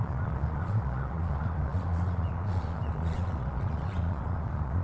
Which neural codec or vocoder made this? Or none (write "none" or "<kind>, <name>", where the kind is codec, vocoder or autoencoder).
vocoder, Vocos